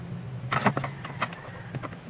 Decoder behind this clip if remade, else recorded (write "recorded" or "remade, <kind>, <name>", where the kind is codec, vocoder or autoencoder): recorded